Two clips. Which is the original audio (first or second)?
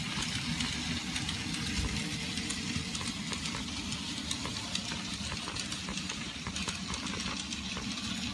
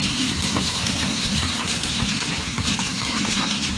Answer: first